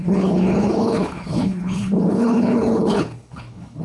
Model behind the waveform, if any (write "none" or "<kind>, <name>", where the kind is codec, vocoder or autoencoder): codec, HILCodec